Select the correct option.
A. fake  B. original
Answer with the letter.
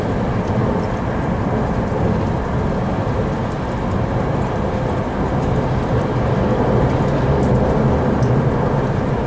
B